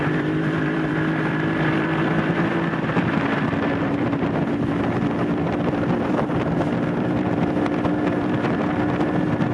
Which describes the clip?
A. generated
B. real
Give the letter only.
A